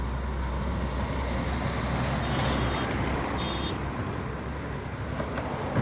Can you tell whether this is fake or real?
real